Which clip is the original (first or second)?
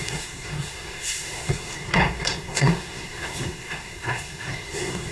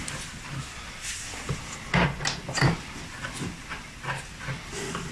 second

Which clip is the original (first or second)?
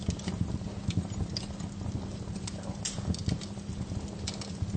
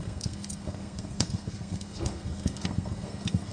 first